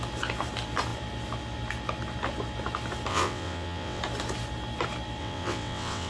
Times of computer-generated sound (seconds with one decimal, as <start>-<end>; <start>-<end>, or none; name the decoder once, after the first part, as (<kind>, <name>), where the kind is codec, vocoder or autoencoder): 3.1-4.0 (vocoder, WaveNeXt); 5.2-6.1